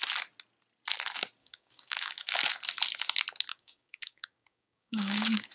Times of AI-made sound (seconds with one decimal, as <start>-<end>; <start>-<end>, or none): 1.4-2.5; 3.5-5.5